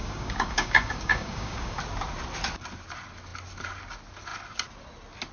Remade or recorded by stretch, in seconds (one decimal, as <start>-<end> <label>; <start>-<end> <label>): 0.0-1.8 remade; 1.8-5.3 recorded